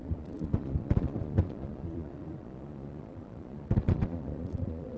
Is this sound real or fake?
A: fake